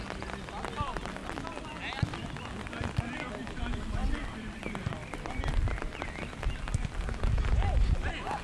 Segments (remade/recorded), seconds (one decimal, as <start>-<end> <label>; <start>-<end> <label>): 0.0-4.0 recorded; 4.0-6.4 remade; 6.4-8.4 recorded